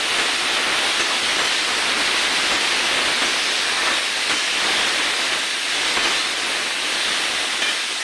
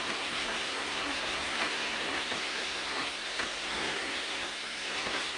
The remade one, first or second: second